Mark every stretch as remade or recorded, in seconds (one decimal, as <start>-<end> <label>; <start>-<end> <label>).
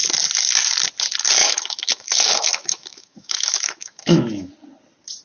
0.0-1.4 recorded; 1.4-4.5 remade; 4.5-5.2 recorded